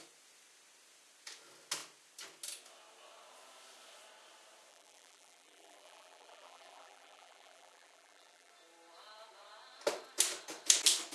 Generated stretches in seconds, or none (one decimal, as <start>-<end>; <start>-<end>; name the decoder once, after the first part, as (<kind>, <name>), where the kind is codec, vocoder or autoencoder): 4.7-8.5 (vocoder, BigVGAN v2)